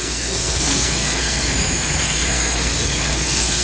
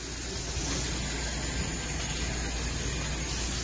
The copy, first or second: first